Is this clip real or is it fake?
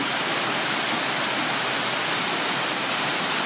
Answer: real